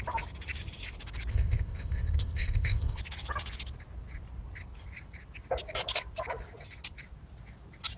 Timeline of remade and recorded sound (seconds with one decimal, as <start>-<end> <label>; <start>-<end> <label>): 0.0-1.3 recorded; 1.3-3.0 remade; 3.0-8.0 recorded

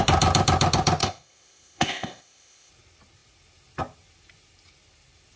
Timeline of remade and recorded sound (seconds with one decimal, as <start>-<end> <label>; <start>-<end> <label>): 0.0-1.0 recorded; 1.0-2.7 remade; 2.7-5.4 recorded

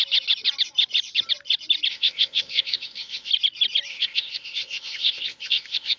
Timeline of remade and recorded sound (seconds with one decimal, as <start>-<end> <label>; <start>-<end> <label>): 0.0-1.9 recorded; 1.9-3.3 remade; 3.3-3.9 recorded; 3.9-6.0 remade

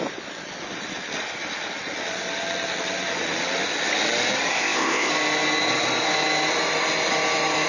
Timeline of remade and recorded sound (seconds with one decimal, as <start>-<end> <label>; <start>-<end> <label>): 0.0-4.5 recorded; 4.5-5.1 remade; 5.1-7.7 recorded

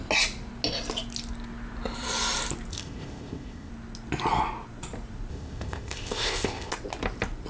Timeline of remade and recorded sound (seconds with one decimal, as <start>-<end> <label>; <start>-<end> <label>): 0.0-2.7 recorded; 2.7-3.7 remade; 3.7-5.3 recorded; 5.3-6.7 remade; 6.7-7.5 recorded

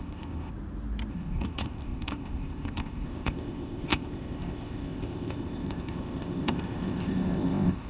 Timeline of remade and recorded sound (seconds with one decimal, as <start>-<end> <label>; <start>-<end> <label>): 0.0-0.5 remade; 0.5-1.1 recorded; 1.1-7.9 remade

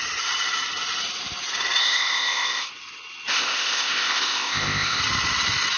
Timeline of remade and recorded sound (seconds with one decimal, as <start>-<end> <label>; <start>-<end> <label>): 0.0-1.8 recorded; 1.8-2.7 remade; 2.7-3.3 recorded; 3.3-5.0 remade; 5.0-5.8 recorded

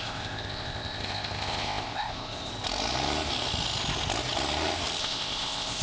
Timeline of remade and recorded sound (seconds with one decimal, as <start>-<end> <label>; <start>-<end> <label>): 0.0-2.5 remade; 2.5-5.0 recorded; 5.0-5.8 remade